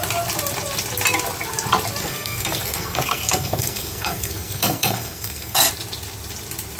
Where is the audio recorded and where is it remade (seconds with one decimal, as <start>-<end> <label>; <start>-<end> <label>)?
0.0-2.0 recorded; 2.0-5.7 remade; 5.7-6.8 recorded